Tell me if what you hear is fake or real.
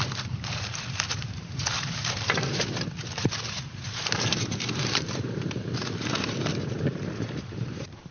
fake